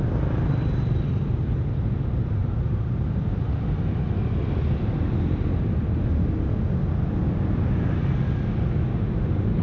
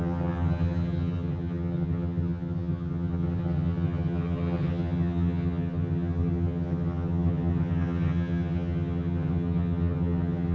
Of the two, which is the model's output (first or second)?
second